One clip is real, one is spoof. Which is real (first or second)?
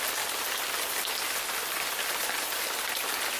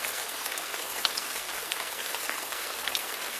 first